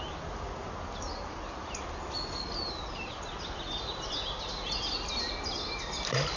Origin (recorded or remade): recorded